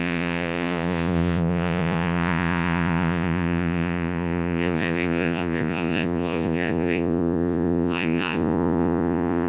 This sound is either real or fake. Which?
fake